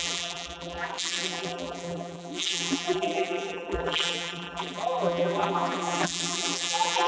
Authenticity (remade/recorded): remade